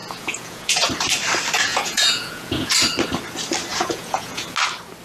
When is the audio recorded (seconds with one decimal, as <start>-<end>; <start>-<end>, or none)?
0.9-1.7; 2.7-3.7; 4.5-5.0